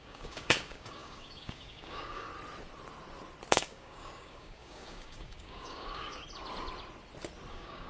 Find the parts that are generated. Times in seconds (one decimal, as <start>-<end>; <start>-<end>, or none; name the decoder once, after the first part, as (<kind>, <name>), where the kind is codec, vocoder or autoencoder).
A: 0.0-2.3 (codec, DAC); 3.5-6.2; 7.5-7.9